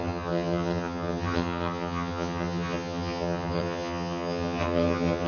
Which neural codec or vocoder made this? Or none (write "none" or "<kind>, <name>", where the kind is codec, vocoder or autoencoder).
vocoder, HiFi-GAN